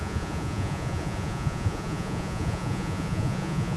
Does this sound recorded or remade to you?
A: remade